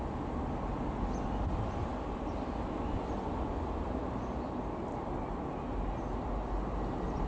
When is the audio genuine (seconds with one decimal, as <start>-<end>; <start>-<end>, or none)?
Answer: 0.0-7.3